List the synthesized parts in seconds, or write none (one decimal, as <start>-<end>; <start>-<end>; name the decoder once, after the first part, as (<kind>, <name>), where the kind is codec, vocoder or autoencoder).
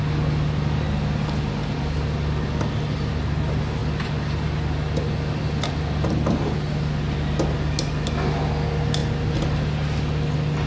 none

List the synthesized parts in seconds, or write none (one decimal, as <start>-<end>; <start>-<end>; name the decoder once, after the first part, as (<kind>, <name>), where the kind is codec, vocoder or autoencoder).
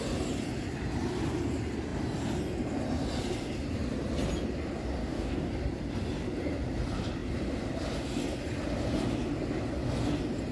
5.0-5.5 (codec, DAC)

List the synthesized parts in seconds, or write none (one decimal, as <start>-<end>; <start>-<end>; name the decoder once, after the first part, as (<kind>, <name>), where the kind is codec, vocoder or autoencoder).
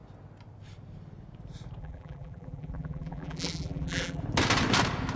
1.8-4.2 (vocoder, BigVGAN v2)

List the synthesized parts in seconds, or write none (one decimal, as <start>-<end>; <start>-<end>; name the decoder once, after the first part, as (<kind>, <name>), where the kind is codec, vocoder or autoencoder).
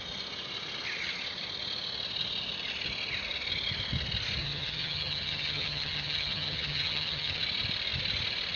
4.4-7.4 (vocoder, HiFi-GAN)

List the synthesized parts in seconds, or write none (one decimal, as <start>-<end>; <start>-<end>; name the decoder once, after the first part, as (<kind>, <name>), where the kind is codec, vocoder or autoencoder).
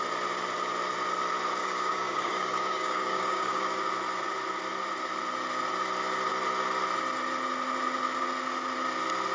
1.6-3.9 (codec, DAC)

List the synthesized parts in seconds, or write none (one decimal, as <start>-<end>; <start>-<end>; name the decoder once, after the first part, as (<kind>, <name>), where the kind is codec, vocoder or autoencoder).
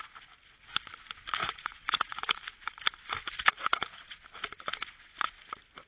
1.4-2.4 (vocoder, Vocos); 3.5-4.2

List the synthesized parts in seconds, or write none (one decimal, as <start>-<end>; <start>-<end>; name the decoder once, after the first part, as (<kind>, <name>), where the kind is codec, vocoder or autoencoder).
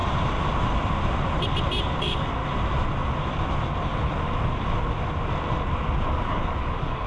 2.0-2.4 (codec, DAC); 6.1-7.1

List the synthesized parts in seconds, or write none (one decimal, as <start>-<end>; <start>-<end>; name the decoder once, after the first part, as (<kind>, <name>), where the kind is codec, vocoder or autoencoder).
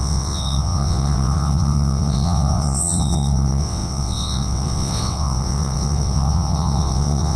0.0-7.4 (vocoder, WaveNeXt)